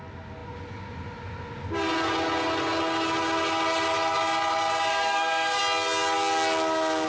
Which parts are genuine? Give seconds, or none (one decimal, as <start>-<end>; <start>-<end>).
0.0-4.9; 5.6-7.1